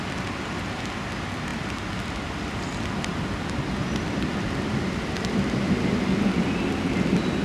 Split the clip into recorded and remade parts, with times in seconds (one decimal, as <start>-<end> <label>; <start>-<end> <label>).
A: 0.0-7.4 recorded